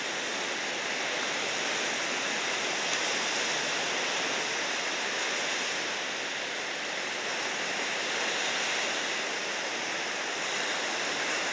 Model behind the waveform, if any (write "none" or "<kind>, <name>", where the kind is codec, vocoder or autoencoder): none